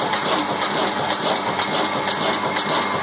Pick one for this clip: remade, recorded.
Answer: recorded